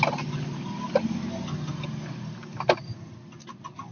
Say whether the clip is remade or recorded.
recorded